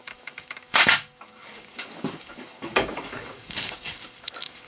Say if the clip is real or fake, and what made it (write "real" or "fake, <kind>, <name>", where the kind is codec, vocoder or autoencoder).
fake, codec, DAC